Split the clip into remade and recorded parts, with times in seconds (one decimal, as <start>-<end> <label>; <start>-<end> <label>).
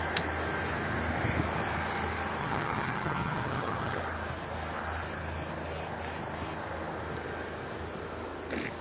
0.0-2.4 recorded; 2.4-4.0 remade; 4.0-8.8 recorded